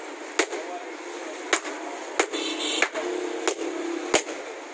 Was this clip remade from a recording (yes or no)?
no